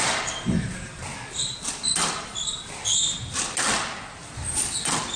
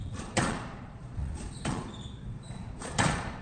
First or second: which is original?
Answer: first